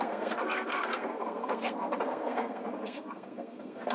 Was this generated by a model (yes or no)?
yes